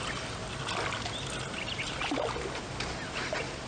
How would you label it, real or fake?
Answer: real